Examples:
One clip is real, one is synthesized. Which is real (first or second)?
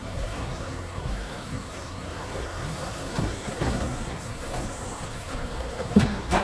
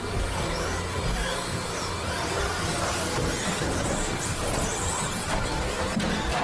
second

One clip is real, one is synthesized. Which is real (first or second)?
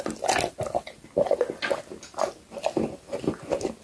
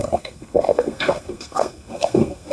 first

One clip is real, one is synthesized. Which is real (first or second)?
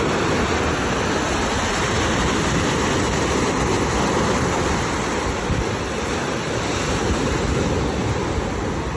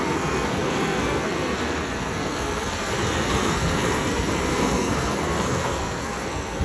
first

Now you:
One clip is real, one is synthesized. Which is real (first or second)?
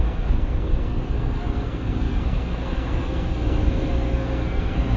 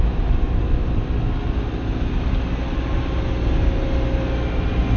second